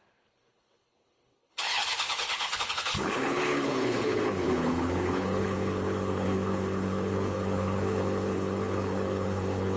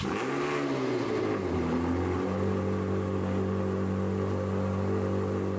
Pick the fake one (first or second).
first